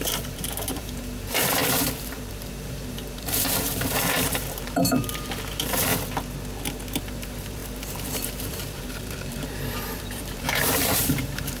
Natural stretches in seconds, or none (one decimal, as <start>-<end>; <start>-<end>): 5.9-7.0

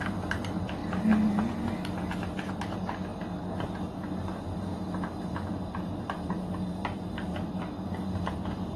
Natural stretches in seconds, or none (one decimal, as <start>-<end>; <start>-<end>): 0.8-2.5; 3.1-3.8

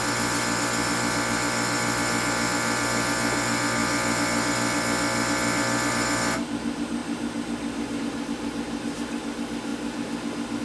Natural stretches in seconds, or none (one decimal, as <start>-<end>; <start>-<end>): 0.0-10.6